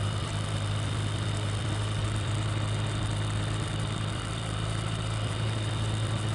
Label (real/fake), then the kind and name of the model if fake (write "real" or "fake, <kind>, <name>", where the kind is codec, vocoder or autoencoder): fake, vocoder, BigVGAN v2